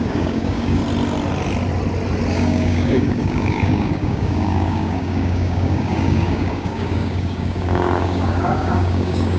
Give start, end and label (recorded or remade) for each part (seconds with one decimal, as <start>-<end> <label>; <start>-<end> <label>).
0.0-0.8 remade; 0.8-2.3 recorded; 2.3-9.4 remade